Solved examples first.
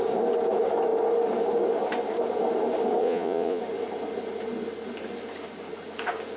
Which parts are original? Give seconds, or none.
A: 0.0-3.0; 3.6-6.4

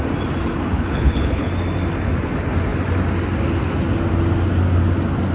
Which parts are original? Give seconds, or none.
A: 0.0-0.7; 1.5-5.3

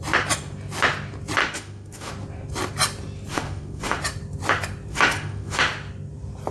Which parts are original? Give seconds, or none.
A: 0.0-1.4; 2.1-3.3; 4.0-4.9; 5.6-6.5

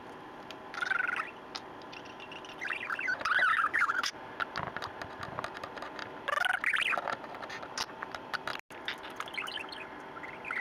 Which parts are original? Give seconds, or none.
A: 0.0-3.5; 4.1-10.6

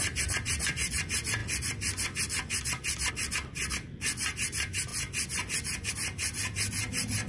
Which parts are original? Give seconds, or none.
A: 0.0-7.3

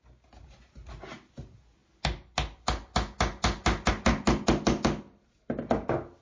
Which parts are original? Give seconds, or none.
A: 0.0-6.2

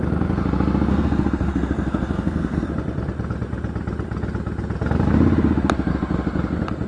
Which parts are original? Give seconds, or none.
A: 0.0-0.9; 2.7-6.9